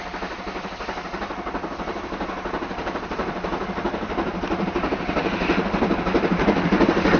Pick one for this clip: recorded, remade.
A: remade